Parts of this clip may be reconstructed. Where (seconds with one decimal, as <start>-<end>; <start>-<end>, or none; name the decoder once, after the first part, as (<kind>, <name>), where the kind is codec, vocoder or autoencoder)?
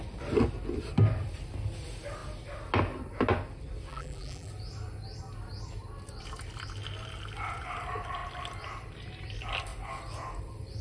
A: 3.9-4.5 (vocoder, BigVGAN v2)